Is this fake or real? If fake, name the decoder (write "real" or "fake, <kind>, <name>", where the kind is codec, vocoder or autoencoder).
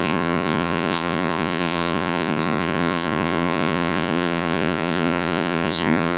fake, vocoder, Vocos